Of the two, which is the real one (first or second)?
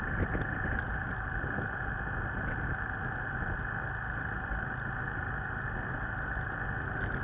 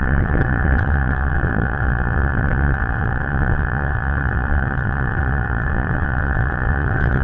first